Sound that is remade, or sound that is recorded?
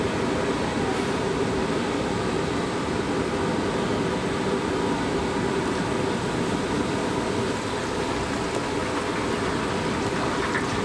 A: recorded